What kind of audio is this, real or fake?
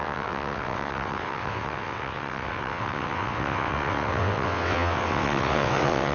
fake